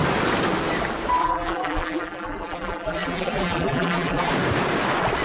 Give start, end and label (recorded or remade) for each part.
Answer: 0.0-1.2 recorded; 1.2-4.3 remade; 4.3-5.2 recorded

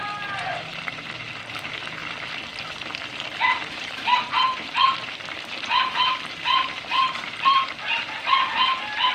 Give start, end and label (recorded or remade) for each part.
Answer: 0.0-2.0 remade; 2.0-3.7 recorded; 3.7-9.1 remade

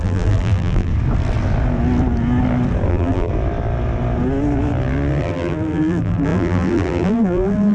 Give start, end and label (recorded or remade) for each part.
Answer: 0.0-0.9 remade; 0.9-2.9 recorded; 2.9-3.3 remade; 3.3-5.2 recorded; 5.2-7.7 remade

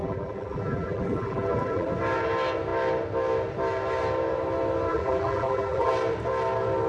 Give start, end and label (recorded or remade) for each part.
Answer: 0.0-1.9 remade; 1.9-4.9 recorded; 4.9-5.9 remade; 5.9-6.9 recorded

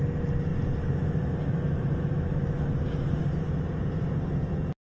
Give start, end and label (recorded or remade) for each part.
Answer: 0.0-0.5 recorded; 0.5-3.3 remade; 3.3-5.0 recorded

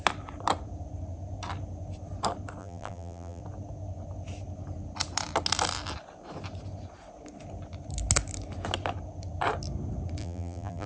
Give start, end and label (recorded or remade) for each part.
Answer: 0.0-2.6 recorded; 2.6-3.4 remade; 3.4-10.2 recorded; 10.2-10.9 remade

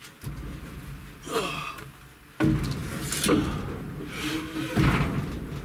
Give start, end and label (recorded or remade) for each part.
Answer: 0.0-5.6 recorded